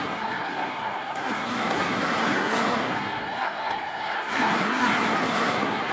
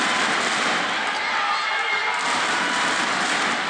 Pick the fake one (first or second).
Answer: first